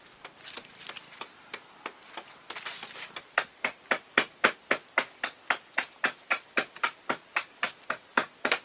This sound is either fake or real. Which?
real